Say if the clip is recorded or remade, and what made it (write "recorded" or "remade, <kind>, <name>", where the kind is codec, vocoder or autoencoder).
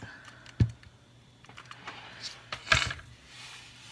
remade, vocoder, BigVGAN v2